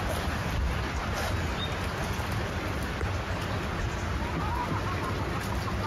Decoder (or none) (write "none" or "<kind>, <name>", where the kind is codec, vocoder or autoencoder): none